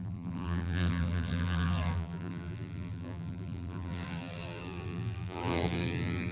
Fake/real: fake